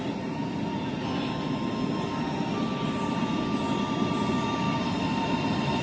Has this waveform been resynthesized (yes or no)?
no